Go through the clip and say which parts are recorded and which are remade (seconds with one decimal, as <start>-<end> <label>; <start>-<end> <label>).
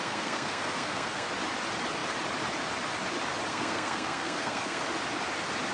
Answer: 0.0-1.3 remade; 1.3-3.5 recorded; 3.5-4.8 remade; 4.8-5.7 recorded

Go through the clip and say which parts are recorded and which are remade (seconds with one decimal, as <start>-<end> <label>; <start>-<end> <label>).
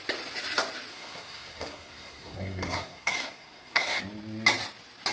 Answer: 0.0-0.9 recorded; 0.9-4.0 remade; 4.0-5.1 recorded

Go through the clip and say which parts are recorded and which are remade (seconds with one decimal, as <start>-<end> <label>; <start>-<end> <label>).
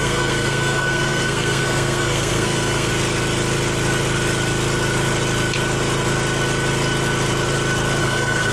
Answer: 0.0-2.9 remade; 2.9-8.0 recorded; 8.0-8.5 remade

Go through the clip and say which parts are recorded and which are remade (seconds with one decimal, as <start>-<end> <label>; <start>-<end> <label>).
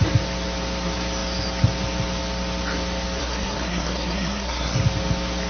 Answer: 0.0-3.2 recorded; 3.2-4.8 remade; 4.8-5.5 recorded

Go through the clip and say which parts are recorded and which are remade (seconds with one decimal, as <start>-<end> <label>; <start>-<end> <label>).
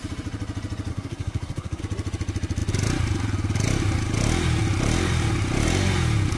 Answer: 0.0-0.9 recorded; 0.9-1.8 remade; 1.8-6.4 recorded